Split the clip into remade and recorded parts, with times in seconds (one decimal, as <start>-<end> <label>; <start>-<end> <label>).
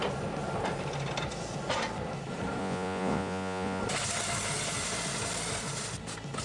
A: 0.0-2.6 recorded; 2.6-3.8 remade; 3.8-6.4 recorded